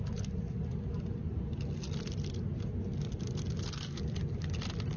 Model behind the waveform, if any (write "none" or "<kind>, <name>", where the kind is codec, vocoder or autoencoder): none